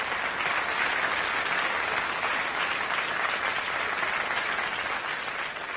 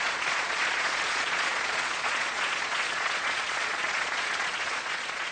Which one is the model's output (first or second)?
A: second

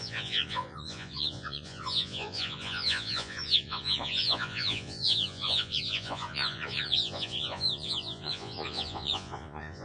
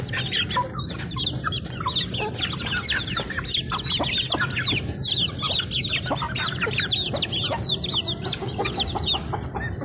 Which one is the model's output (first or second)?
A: first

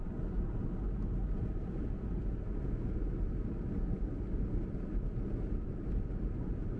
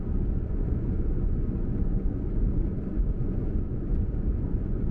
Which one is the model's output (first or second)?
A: second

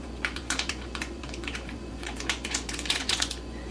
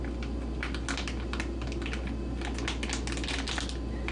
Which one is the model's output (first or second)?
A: first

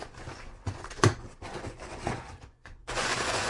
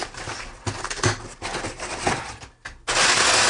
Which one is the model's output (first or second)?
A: first